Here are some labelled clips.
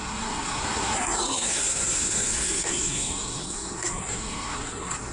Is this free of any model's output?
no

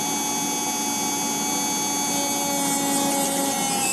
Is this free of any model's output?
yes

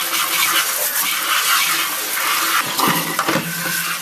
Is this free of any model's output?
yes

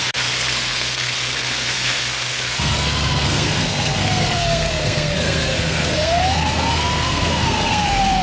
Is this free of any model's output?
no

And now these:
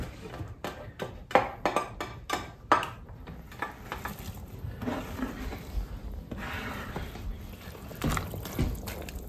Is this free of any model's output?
yes